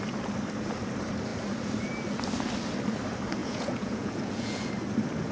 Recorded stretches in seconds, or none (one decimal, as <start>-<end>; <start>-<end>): 0.0-3.4; 4.7-5.3